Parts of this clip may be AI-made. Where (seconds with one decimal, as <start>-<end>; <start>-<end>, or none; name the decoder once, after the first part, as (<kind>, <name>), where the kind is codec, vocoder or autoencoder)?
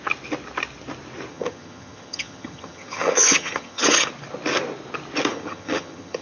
1.3-4.1 (vocoder, HiFi-GAN); 5.3-6.2